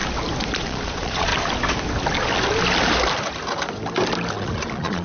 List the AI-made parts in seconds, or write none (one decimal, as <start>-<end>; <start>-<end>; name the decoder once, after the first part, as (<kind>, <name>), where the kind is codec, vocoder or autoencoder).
0.6-1.3 (vocoder, Vocos); 4.3-5.0